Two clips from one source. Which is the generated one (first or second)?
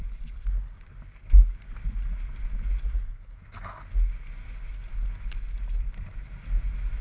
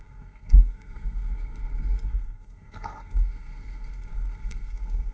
second